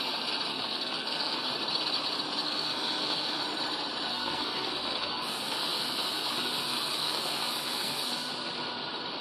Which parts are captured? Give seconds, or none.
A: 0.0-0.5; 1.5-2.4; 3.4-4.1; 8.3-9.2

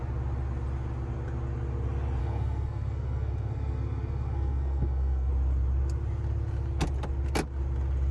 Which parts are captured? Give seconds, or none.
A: 0.0-2.2; 5.3-8.1

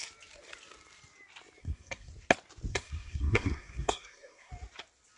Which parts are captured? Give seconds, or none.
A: 0.0-1.6; 2.1-2.7; 4.5-5.2

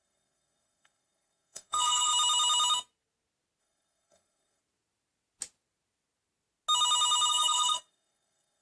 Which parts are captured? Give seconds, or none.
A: 2.1-3.6; 4.6-7.3

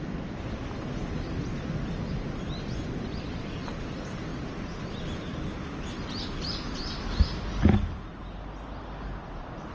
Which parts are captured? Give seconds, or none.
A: 0.0-9.7

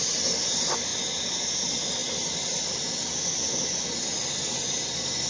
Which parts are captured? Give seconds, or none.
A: 0.0-5.3